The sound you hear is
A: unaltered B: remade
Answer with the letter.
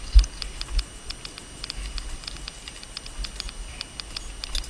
A